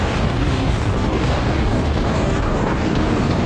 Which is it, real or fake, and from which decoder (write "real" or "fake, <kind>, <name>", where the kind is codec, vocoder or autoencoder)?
fake, codec, DAC